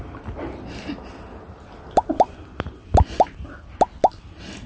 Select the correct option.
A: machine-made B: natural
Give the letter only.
B